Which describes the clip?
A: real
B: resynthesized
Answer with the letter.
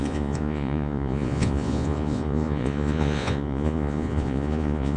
B